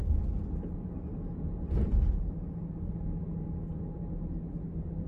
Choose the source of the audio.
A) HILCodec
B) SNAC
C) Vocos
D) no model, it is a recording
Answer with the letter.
D